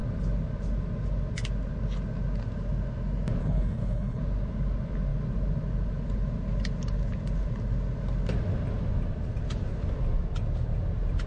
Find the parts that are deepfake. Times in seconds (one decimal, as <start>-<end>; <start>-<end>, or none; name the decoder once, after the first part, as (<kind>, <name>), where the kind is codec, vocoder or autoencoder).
3.4-4.2 (codec, HILCodec)